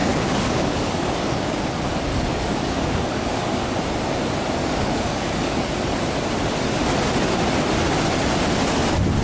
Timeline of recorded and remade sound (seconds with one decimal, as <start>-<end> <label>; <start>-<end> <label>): 0.0-1.6 remade; 1.6-2.1 recorded; 2.1-3.6 remade; 3.6-4.6 recorded; 4.6-5.7 remade; 5.7-9.2 recorded